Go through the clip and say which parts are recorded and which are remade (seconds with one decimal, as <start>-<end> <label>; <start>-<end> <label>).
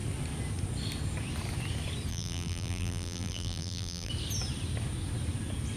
0.0-2.1 recorded; 2.1-4.1 remade; 4.1-5.8 recorded